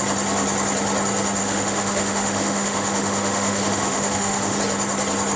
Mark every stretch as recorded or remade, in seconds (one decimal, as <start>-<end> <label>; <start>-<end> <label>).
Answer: 0.0-1.4 recorded; 1.4-4.6 remade; 4.6-5.4 recorded